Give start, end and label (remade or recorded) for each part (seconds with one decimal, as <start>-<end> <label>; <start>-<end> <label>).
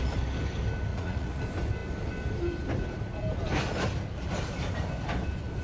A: 0.0-0.9 recorded; 0.9-1.4 remade; 1.4-5.6 recorded